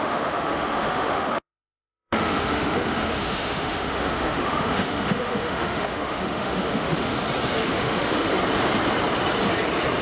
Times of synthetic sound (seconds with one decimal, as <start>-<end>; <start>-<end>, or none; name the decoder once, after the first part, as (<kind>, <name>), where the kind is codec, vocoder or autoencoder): 0.0-7.1 (autoencoder, DAC-VAE); 7.8-8.3